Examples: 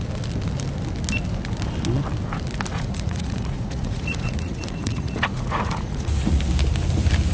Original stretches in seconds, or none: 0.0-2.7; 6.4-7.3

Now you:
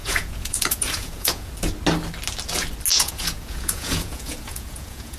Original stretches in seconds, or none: 1.5-2.9

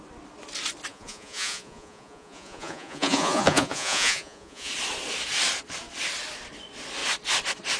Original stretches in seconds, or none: 0.0-0.9; 4.7-7.8

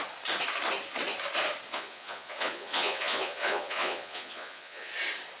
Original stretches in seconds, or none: 0.0-1.7; 4.9-5.4